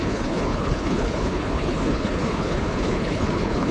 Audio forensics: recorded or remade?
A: remade